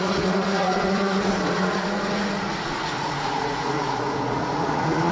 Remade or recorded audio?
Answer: remade